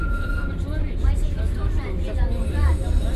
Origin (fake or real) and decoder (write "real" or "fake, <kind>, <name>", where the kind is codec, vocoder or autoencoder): real